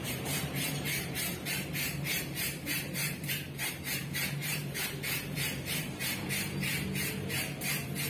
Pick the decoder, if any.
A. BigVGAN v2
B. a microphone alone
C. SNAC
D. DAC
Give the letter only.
A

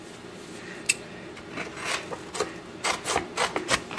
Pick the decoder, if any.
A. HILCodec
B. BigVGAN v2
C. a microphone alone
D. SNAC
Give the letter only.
C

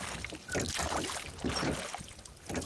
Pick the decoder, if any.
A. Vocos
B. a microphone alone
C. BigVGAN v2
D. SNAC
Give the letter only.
B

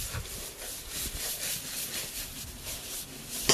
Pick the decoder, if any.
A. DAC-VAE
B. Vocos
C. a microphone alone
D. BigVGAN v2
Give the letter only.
C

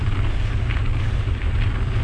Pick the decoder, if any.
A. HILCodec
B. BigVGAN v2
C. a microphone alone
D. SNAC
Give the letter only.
C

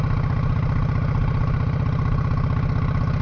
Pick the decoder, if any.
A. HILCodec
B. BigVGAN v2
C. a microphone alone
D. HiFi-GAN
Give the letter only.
C